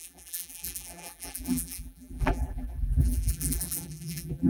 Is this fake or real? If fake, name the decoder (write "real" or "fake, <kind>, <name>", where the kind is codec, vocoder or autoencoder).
fake, vocoder, BigVGAN v2